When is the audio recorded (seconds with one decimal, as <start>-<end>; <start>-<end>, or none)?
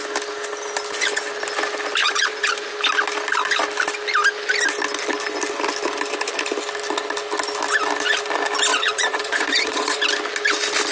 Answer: 0.0-2.0; 2.5-8.7; 10.0-10.9